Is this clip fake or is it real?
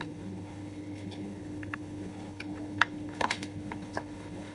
fake